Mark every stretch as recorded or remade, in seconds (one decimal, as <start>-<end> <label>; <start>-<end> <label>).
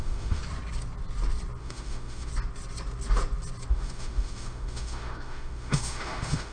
0.0-0.4 remade; 0.4-1.6 recorded; 1.6-2.3 remade; 2.3-3.7 recorded; 3.7-6.5 remade